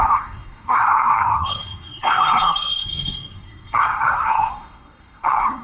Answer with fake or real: fake